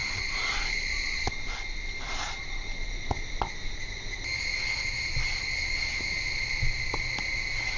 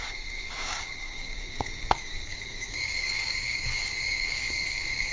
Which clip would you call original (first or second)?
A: first